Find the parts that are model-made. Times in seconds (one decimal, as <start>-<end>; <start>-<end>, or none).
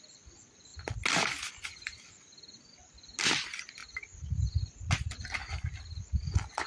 none